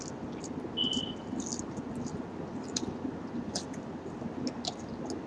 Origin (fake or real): real